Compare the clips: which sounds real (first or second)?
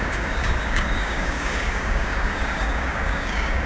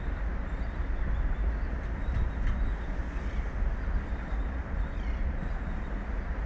second